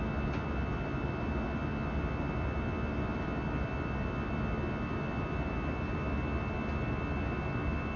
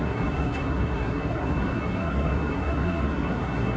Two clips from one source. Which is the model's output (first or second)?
second